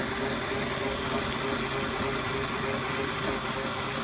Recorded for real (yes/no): yes